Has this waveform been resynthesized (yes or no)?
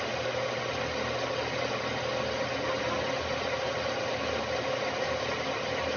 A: no